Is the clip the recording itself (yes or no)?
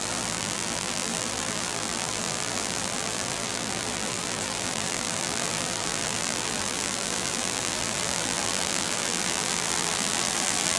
no